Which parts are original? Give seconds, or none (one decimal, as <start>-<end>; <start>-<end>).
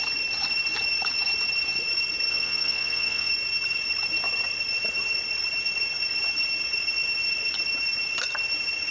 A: 0.0-2.3; 3.3-8.9